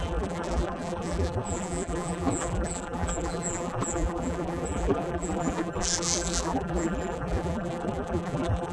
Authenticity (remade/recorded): remade